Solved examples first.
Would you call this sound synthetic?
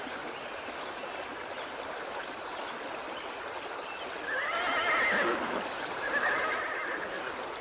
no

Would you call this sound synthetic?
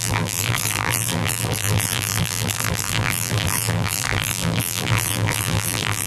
yes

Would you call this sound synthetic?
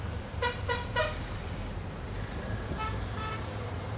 yes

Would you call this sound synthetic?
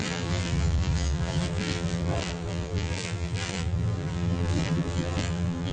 yes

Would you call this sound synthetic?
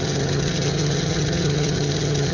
yes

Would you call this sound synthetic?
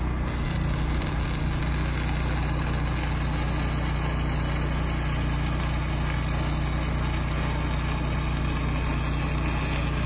no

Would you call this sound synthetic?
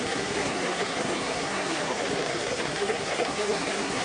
yes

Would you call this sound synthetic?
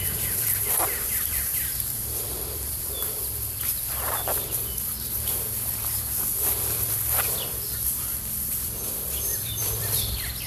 yes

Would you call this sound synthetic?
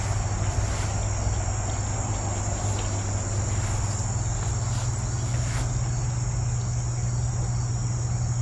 no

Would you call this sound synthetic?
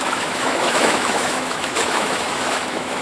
yes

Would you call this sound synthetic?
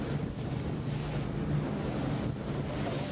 no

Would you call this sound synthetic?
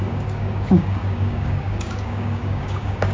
yes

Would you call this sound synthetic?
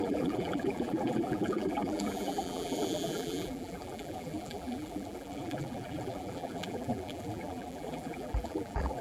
yes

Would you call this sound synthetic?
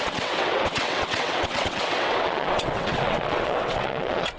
yes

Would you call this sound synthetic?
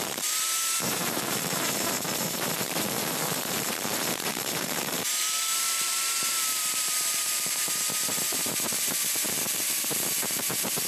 yes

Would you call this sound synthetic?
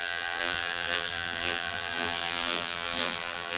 yes